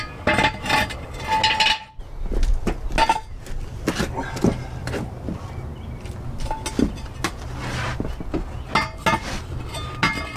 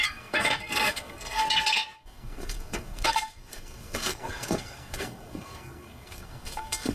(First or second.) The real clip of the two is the first